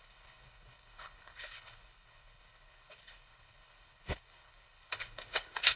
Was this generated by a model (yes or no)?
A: yes